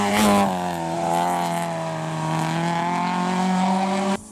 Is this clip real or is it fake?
real